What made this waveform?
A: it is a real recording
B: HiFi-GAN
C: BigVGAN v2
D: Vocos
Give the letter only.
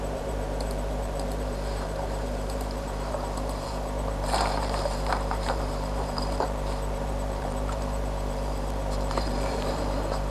C